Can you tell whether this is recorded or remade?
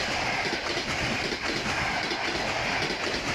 recorded